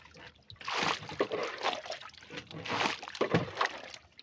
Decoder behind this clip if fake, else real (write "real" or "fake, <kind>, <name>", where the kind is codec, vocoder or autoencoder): real